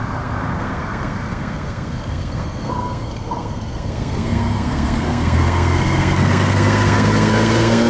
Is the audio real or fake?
fake